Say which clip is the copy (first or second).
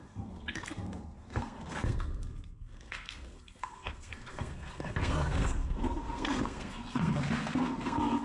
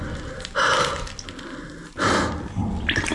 first